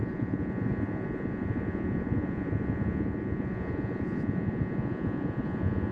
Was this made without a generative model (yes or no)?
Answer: no